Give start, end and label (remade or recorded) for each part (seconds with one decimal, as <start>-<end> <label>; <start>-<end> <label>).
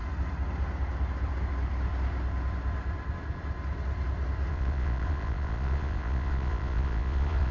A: 0.0-4.5 recorded; 4.5-7.5 remade